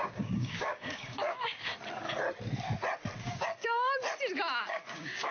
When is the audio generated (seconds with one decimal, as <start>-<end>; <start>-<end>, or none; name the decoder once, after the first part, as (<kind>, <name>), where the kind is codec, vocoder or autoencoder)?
0.0-1.7 (codec, DAC); 3.2-4.0; 4.6-5.3